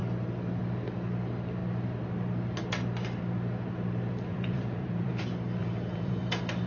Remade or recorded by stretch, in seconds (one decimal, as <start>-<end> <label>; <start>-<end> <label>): 0.0-4.3 recorded; 4.3-5.1 remade; 5.1-5.6 recorded; 5.6-6.2 remade; 6.2-6.7 recorded